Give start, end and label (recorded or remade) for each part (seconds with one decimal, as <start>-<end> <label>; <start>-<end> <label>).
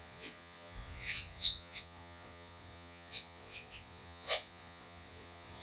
0.0-5.6 remade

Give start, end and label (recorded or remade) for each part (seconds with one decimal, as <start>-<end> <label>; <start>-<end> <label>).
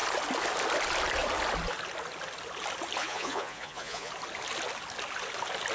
0.0-3.0 recorded; 3.0-4.1 remade; 4.1-5.7 recorded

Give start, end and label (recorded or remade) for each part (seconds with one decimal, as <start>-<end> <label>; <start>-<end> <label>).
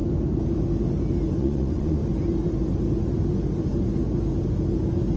0.0-1.4 recorded; 1.4-2.0 remade; 2.0-5.2 recorded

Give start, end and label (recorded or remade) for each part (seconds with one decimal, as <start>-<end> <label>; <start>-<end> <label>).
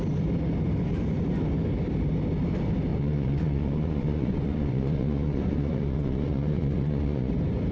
0.0-2.9 recorded; 2.9-7.3 remade; 7.3-7.7 recorded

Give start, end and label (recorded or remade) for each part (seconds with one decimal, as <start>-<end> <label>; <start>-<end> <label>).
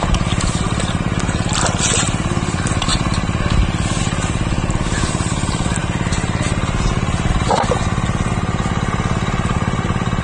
0.0-10.2 recorded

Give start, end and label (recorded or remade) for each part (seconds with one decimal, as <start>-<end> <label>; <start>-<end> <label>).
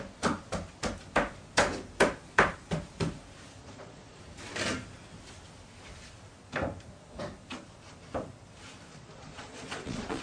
0.0-3.6 recorded; 3.6-4.2 remade; 4.2-8.9 recorded; 8.9-10.2 remade